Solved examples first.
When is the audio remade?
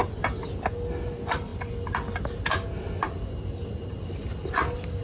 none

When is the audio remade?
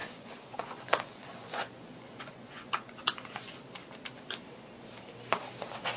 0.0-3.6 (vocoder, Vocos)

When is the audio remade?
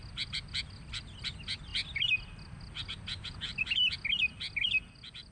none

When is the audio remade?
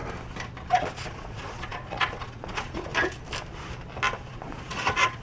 0.7-2.9 (vocoder, Vocos); 4.3-5.2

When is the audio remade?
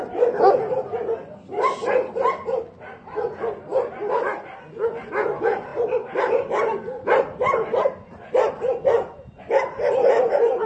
none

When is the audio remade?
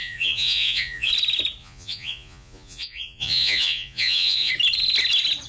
0.0-1.1 (vocoder, Vocos); 1.6-4.5